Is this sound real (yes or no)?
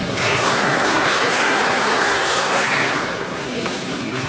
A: no